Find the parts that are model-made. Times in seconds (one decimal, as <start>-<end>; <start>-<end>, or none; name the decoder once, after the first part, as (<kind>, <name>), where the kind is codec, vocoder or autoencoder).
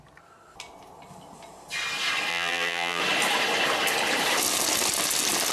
2.3-3.0 (vocoder, BigVGAN v2)